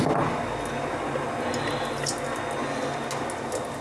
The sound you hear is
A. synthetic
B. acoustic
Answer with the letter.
B